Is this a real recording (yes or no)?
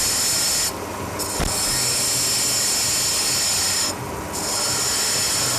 yes